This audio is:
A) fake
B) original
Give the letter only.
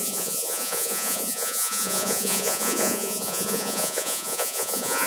A